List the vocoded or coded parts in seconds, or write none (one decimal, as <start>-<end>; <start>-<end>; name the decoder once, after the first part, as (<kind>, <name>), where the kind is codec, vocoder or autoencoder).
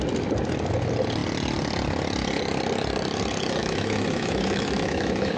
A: 3.6-5.4 (autoencoder, DAC-VAE)